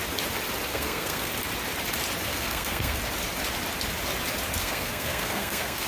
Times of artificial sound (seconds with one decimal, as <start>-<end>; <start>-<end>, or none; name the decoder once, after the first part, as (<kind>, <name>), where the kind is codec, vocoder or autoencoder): 0.7-1.3 (codec, SNAC); 2.3-3.0; 4.6-5.9